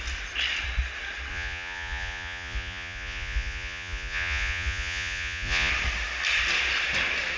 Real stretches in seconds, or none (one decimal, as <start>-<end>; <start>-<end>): 0.0-1.3; 5.7-7.4